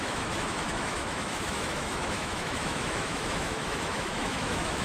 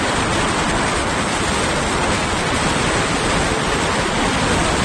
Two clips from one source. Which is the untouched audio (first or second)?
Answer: second